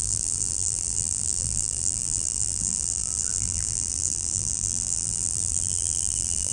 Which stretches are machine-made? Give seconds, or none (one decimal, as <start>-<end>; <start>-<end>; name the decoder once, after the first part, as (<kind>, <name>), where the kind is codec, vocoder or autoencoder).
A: 0.0-6.5 (vocoder, BigVGAN v2)